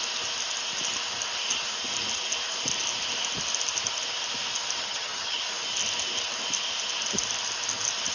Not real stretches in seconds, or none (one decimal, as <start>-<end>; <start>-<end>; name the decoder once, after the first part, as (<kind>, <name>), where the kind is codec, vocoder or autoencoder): 4.8-5.4 (vocoder, HiFi-GAN)